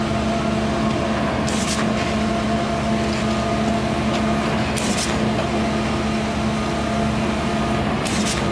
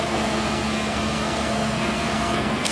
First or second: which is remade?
second